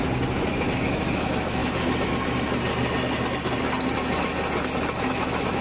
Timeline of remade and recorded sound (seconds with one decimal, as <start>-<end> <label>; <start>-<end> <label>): 0.0-0.5 recorded; 0.5-1.6 remade; 1.6-5.0 recorded; 5.0-5.6 remade